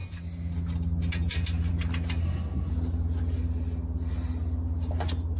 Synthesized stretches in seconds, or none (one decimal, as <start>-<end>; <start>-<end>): 2.2-2.7